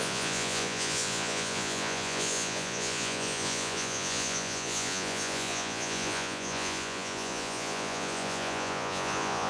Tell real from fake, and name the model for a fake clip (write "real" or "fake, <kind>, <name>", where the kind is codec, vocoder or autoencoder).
fake, vocoder, Vocos